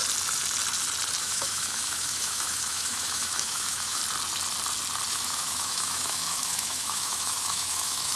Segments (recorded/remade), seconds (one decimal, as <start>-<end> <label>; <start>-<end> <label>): 0.0-1.2 recorded; 1.2-4.0 remade; 4.0-5.1 recorded; 5.1-8.1 remade